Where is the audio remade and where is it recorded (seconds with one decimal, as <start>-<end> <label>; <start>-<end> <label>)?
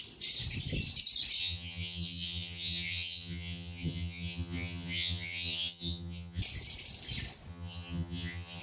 0.0-1.4 recorded; 1.4-6.4 remade; 6.4-7.5 recorded; 7.5-8.6 remade